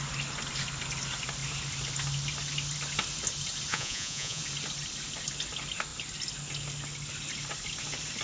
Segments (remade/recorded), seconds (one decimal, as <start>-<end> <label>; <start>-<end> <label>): 0.0-3.7 recorded; 3.7-4.4 remade; 4.4-8.2 recorded